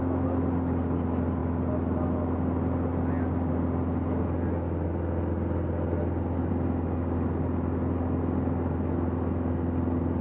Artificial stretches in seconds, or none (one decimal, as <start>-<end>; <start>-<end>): none